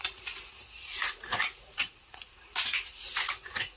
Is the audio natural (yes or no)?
no